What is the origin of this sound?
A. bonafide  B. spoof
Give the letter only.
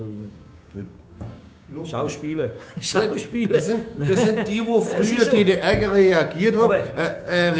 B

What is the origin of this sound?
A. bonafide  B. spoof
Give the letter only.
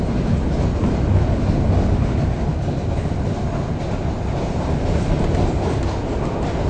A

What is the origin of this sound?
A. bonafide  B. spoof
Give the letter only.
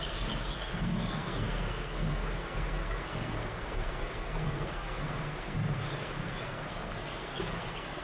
B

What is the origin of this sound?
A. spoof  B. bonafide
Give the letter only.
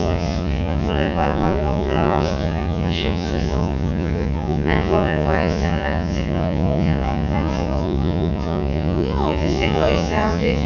A